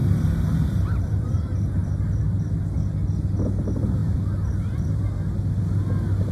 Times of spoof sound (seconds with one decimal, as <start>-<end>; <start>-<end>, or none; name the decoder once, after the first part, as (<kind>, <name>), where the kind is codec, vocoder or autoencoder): 0.0-1.4 (vocoder, BigVGAN v2); 1.8-2.4; 4.0-5.1